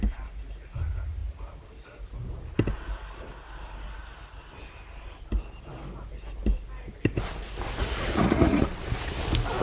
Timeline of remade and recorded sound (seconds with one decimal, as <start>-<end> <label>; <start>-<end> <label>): 0.0-7.8 recorded; 7.8-8.7 remade; 8.7-9.6 recorded